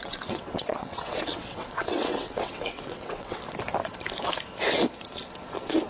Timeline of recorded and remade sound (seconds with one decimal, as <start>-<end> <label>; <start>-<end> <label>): 0.0-3.4 remade; 3.4-5.9 recorded